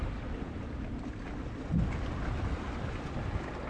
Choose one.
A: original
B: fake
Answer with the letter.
A